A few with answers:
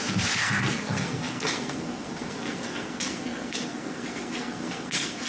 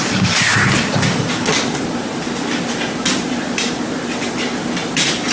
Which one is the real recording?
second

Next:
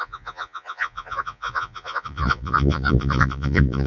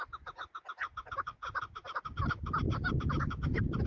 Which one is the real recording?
second